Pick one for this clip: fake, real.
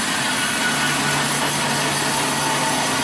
real